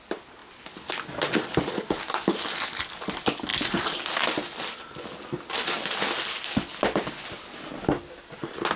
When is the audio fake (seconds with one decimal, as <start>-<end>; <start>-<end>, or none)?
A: none